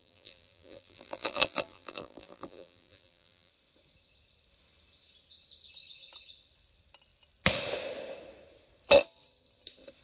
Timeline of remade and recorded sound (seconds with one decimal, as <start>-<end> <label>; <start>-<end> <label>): 0.0-3.5 remade; 3.5-10.0 recorded